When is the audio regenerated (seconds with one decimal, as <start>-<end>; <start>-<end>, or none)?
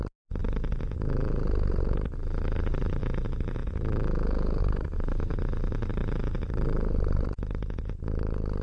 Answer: 0.0-0.4; 2.4-3.0; 4.6-8.6